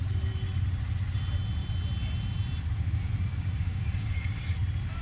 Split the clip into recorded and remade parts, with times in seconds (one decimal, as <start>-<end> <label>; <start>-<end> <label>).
0.0-3.3 recorded; 3.3-4.4 remade; 4.4-5.0 recorded